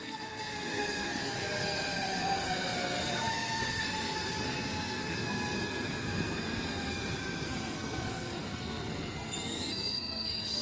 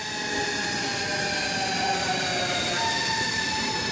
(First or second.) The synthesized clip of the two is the first